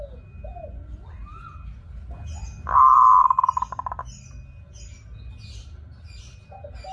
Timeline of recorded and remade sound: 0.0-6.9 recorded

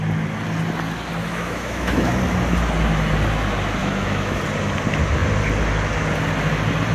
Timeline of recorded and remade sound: 0.0-1.2 recorded; 1.2-2.2 remade; 2.2-3.8 recorded; 3.8-4.4 remade; 4.4-6.9 recorded

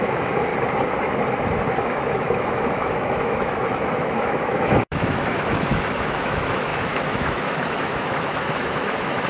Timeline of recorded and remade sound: 0.0-0.5 remade; 0.5-1.8 recorded; 1.8-9.3 remade

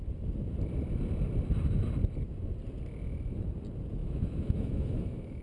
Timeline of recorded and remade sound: 0.0-4.0 recorded; 4.0-5.4 remade

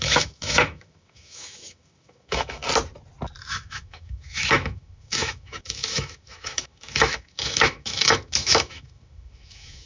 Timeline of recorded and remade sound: 0.0-2.6 remade; 2.6-3.4 recorded; 3.4-9.9 remade

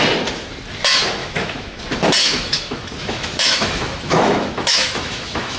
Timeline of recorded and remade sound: 0.0-1.2 recorded; 1.2-1.8 remade; 1.8-2.2 recorded; 2.2-5.6 remade

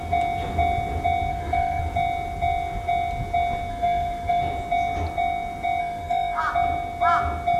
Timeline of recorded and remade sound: 0.0-1.3 recorded; 1.3-1.8 remade; 1.8-3.7 recorded; 3.7-4.4 remade; 4.4-5.8 recorded; 5.8-6.4 remade; 6.4-7.6 recorded

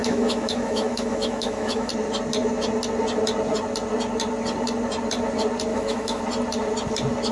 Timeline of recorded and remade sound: 0.0-1.9 remade; 1.9-5.7 recorded; 5.7-6.2 remade; 6.2-7.3 recorded